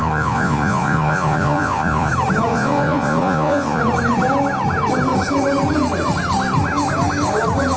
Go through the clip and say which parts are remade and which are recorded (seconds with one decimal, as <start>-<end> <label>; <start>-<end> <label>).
0.0-2.1 remade; 2.1-2.5 recorded; 2.5-3.8 remade; 3.8-7.8 recorded